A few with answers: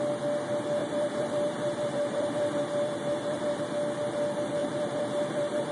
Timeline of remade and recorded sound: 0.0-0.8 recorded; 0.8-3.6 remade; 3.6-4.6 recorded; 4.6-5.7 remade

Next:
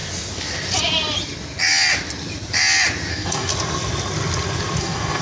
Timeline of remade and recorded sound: 0.0-3.1 recorded; 3.1-3.5 remade; 3.5-4.8 recorded; 4.8-5.2 remade

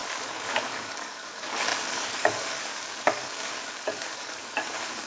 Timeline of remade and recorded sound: 0.0-5.1 remade